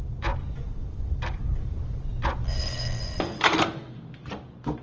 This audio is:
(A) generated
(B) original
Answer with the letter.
A